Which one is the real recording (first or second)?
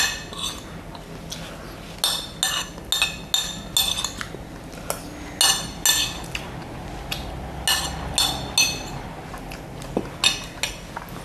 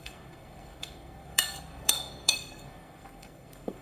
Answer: first